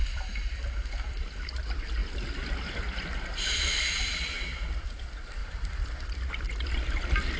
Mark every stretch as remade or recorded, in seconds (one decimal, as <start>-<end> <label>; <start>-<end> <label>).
0.0-1.2 remade; 1.2-5.4 recorded; 5.4-7.4 remade

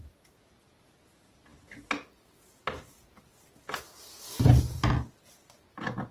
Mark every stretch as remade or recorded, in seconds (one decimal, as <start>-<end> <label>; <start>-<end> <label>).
0.0-6.1 recorded